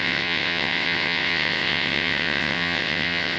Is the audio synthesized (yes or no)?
yes